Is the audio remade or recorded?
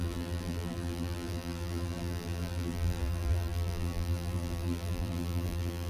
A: remade